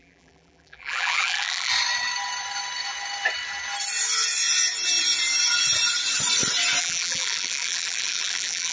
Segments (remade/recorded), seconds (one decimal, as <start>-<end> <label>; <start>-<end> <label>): 0.0-1.7 remade; 1.7-6.8 recorded; 6.8-8.7 remade